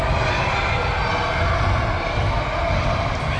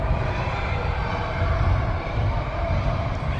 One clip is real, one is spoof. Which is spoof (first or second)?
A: second